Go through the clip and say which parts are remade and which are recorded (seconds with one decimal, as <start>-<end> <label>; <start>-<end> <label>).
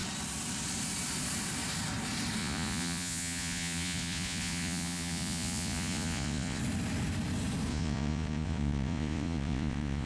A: 0.0-2.4 recorded; 2.4-6.6 remade; 6.6-7.7 recorded; 7.7-10.1 remade